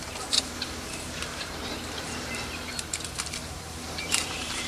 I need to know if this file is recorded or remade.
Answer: remade